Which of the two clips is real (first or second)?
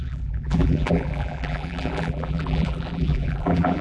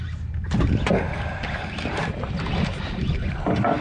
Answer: second